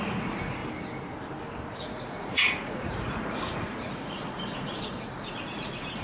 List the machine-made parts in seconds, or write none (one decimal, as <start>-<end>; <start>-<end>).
0.0-0.6; 1.8-6.0